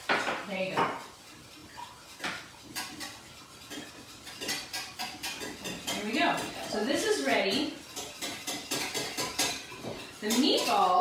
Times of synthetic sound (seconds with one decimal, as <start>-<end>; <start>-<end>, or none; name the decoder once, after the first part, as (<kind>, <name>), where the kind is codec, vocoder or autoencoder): none